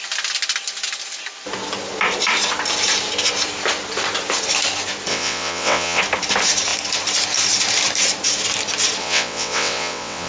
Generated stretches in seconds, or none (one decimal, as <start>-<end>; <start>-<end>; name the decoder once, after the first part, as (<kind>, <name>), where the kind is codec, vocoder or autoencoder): 5.1-6.0 (vocoder, WaveNeXt); 9.0-10.3